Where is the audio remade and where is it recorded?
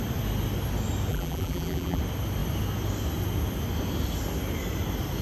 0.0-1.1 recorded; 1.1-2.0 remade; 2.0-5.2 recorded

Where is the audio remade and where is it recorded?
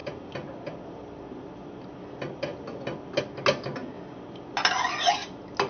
0.0-5.7 recorded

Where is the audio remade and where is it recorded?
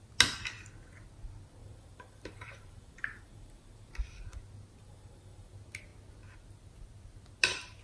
0.0-1.6 recorded; 1.6-3.9 remade; 3.9-4.8 recorded; 4.8-5.5 remade; 5.5-7.8 recorded